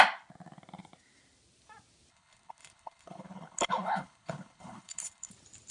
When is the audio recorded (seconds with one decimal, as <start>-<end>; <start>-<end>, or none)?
0.0-2.1; 5.3-5.7